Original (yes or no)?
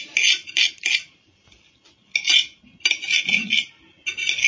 yes